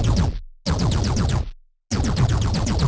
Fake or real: real